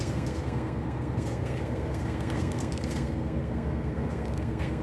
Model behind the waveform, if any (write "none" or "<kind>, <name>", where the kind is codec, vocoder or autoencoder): codec, SNAC